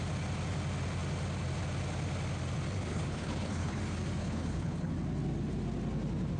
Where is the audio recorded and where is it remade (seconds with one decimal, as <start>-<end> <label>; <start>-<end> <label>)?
0.0-2.9 recorded; 2.9-3.8 remade; 3.8-4.2 recorded; 4.2-4.9 remade; 4.9-6.4 recorded